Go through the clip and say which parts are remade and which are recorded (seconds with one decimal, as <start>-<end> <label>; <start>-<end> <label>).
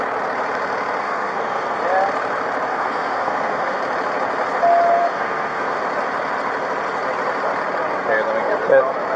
0.0-1.0 recorded; 1.0-1.8 remade; 1.8-2.7 recorded; 2.7-3.8 remade; 3.8-5.0 recorded; 5.0-5.8 remade; 5.8-9.2 recorded